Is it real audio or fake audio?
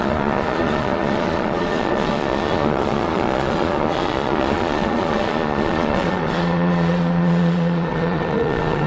fake